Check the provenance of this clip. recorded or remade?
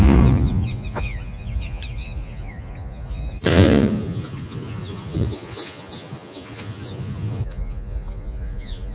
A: remade